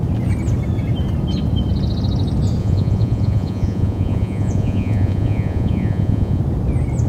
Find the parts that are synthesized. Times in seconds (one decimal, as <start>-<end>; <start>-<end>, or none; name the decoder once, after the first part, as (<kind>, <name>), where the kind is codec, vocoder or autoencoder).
2.6-6.4 (vocoder, Vocos)